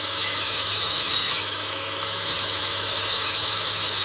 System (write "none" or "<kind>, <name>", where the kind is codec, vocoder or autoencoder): autoencoder, DAC-VAE